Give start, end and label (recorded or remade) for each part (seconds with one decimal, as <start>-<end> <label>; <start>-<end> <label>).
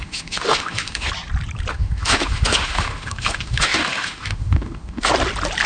0.0-1.1 remade; 1.1-1.7 recorded; 1.7-5.1 remade; 5.1-5.7 recorded